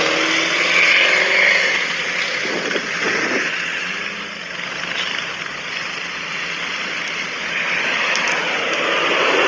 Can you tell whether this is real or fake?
real